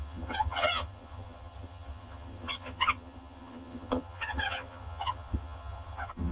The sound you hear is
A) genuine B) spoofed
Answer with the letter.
B